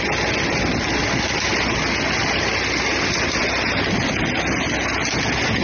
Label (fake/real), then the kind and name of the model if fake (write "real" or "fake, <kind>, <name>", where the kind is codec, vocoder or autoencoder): real